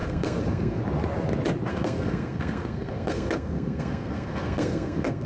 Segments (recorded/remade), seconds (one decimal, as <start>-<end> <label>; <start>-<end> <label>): 0.0-0.8 remade; 0.8-1.7 recorded; 1.7-5.3 remade